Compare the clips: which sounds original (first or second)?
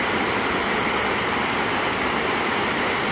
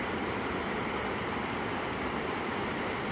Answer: first